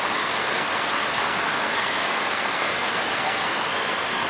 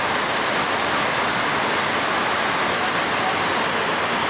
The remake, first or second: first